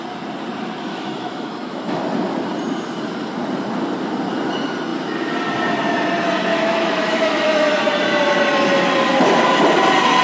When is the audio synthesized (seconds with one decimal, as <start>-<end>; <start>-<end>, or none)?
0.9-2.0; 6.5-7.8